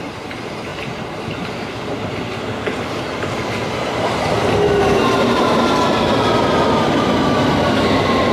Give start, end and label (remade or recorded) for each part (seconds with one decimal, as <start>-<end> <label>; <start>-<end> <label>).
0.0-8.3 recorded